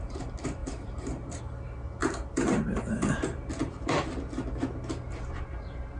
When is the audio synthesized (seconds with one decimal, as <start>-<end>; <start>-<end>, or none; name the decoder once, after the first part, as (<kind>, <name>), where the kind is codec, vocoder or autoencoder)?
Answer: 0.6-1.4 (vocoder, BigVGAN v2); 2.0-3.5